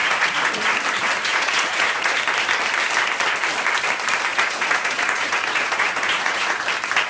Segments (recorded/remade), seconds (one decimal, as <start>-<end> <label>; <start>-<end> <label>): 0.0-0.7 remade; 0.7-1.3 recorded; 1.3-2.1 remade; 2.1-4.3 recorded; 4.3-6.6 remade; 6.6-7.1 recorded